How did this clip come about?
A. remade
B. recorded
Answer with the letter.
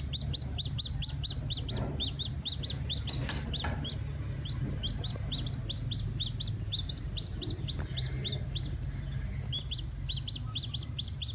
B